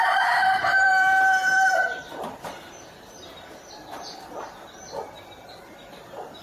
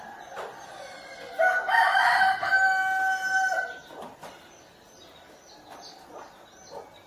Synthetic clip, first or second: first